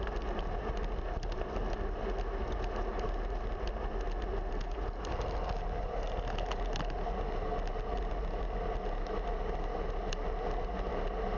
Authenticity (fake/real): real